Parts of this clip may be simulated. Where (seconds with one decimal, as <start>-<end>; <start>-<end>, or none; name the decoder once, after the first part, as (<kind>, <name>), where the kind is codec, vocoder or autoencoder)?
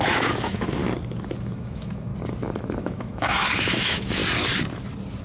0.0-0.8 (autoencoder, DAC-VAE); 1.4-2.1; 2.8-4.2